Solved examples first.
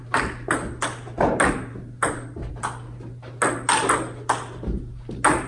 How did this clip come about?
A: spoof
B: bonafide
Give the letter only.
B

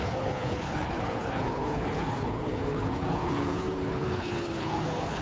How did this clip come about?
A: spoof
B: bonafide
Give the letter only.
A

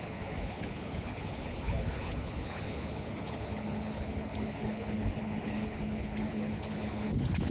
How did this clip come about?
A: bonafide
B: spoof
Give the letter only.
B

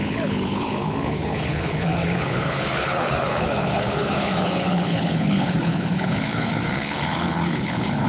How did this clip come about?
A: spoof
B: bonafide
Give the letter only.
A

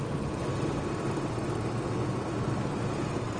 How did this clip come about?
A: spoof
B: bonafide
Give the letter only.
B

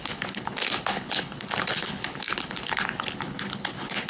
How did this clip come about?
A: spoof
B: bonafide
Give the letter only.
A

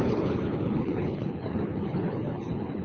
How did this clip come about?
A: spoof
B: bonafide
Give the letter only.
A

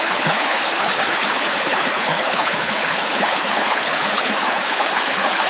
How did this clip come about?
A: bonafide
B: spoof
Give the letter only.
B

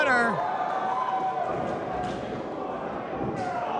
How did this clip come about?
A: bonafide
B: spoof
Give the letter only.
A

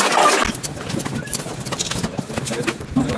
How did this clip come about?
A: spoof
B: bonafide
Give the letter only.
B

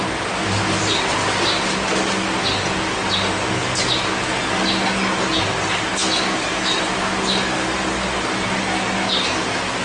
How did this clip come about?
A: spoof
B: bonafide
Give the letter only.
B